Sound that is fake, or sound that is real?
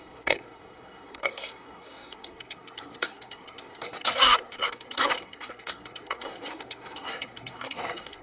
fake